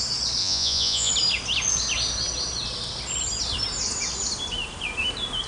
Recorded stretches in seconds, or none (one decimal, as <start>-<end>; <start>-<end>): 0.0-0.4; 1.1-5.5